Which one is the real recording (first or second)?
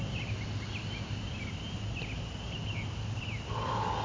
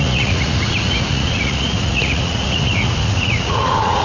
first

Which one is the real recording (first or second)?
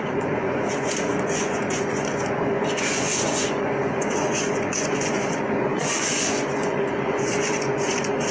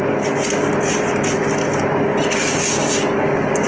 second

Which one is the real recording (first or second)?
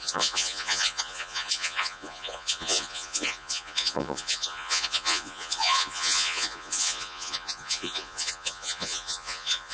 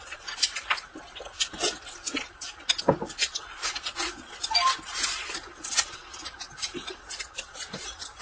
second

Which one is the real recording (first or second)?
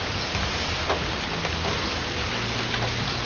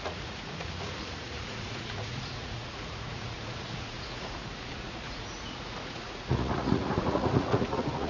first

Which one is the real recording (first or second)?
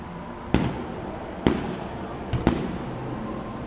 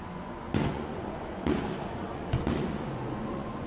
first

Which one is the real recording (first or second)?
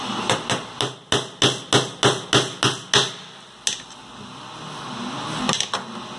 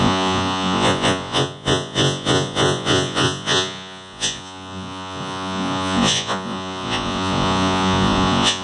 first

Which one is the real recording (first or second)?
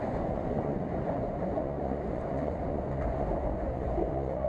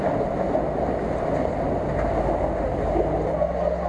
second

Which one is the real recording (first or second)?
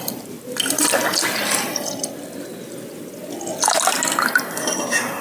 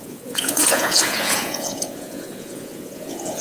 first